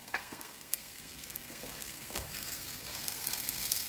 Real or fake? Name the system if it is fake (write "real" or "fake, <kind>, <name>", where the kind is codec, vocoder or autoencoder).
fake, codec, SNAC